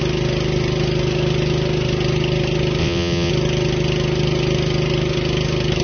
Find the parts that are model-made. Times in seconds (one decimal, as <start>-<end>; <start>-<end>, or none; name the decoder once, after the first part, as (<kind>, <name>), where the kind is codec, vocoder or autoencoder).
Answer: 2.8-3.3 (vocoder, WaveNeXt)

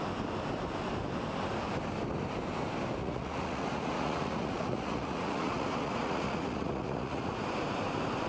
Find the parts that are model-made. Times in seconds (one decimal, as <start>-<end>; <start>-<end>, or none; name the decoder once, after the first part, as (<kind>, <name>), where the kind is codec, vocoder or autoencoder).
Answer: 3.0-7.4 (vocoder, Vocos)